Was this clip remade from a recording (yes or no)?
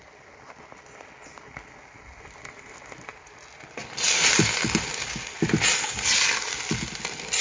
no